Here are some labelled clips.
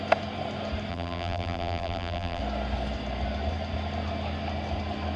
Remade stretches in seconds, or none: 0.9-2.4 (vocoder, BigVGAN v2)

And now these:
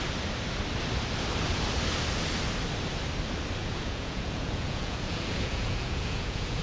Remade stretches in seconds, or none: 3.6-6.6 (vocoder, Vocos)

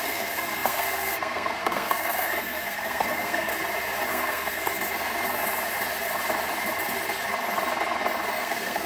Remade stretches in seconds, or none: 0.0-3.5 (codec, SNAC); 4.1-4.7; 8.3-8.9

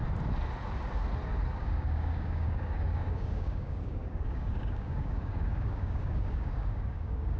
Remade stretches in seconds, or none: 1.5-7.4 (codec, DAC)

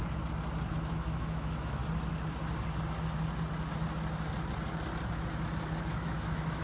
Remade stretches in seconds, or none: 0.7-1.8 (autoencoder, DAC-VAE); 5.8-6.6